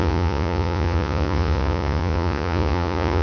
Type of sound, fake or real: fake